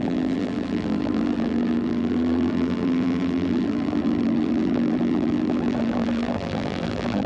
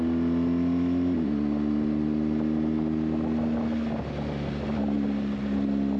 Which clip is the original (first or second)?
second